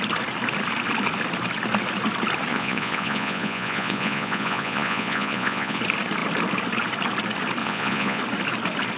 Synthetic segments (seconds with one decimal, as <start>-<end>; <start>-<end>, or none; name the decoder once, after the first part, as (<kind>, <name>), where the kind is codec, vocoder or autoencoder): 2.5-5.8 (vocoder, Vocos); 7.6-8.2

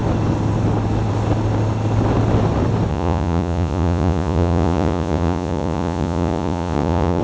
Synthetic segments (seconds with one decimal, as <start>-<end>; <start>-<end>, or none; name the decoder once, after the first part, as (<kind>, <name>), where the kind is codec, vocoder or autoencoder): 2.9-7.2 (vocoder, Vocos)